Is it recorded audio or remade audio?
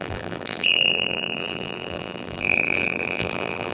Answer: remade